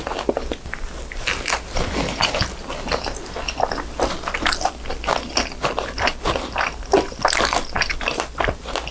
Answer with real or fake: real